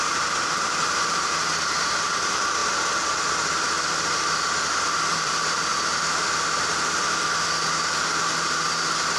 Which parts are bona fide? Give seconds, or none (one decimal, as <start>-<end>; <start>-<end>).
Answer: 2.6-5.1; 5.7-7.7